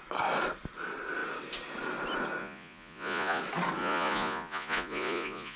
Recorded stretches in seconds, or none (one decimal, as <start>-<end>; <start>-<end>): 0.0-2.4; 3.4-3.8

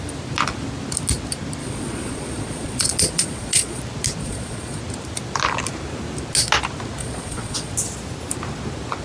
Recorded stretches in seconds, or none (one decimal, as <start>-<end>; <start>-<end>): 0.0-1.6; 3.8-4.2; 4.8-7.0; 7.7-9.0

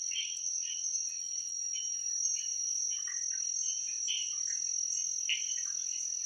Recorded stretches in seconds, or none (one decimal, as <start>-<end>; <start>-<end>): 0.0-2.5; 3.0-3.7; 4.4-6.3

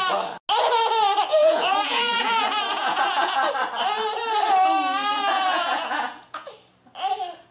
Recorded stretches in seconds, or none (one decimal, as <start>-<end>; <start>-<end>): 0.0-1.3; 3.5-5.1; 6.5-7.5

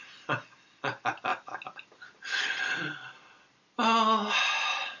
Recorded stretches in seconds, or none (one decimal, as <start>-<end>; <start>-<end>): 0.0-5.0

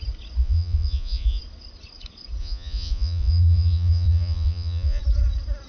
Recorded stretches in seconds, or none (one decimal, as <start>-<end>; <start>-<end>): 0.0-0.4; 1.4-2.4; 5.0-5.7

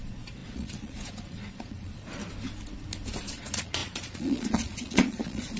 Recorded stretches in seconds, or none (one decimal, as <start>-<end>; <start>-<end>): 2.2-3.3

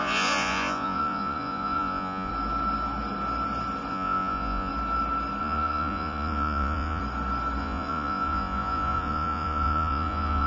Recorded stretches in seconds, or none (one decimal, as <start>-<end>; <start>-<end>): 2.3-3.9; 4.7-5.4; 7.0-7.6